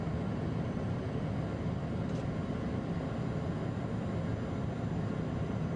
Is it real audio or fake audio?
real